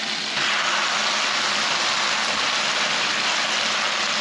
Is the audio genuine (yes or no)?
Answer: yes